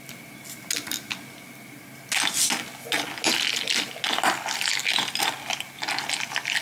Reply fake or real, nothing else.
real